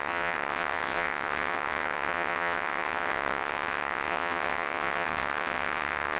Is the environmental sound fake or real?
fake